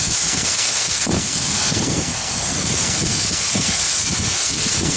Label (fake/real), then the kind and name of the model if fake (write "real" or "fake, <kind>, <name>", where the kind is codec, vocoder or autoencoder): fake, codec, SNAC